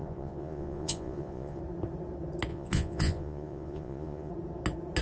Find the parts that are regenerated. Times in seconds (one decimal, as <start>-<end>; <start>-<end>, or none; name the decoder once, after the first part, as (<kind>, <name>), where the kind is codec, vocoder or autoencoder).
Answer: 0.0-1.6 (vocoder, Vocos); 2.5-4.3